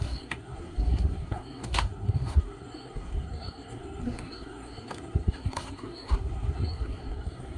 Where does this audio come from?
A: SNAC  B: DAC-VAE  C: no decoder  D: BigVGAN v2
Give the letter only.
A